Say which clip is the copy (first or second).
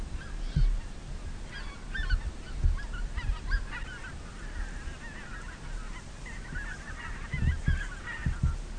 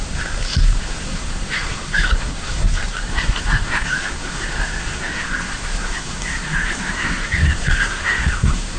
second